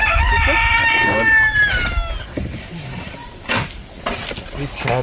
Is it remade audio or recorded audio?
recorded